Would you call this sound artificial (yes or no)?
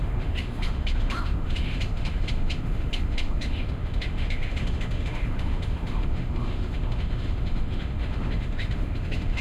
yes